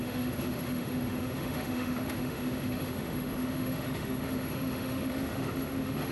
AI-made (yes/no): yes